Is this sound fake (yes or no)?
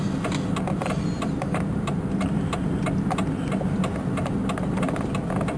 no